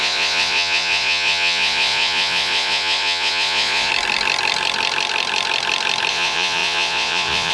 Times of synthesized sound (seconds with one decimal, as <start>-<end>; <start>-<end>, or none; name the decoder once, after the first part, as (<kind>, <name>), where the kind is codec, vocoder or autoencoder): 0.0-3.9 (vocoder, Vocos); 6.1-7.5